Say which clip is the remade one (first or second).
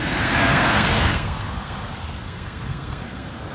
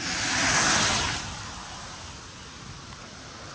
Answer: first